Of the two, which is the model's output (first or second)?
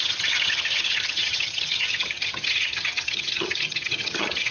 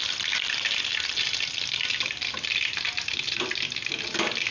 first